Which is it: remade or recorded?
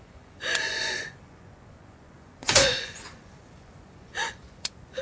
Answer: remade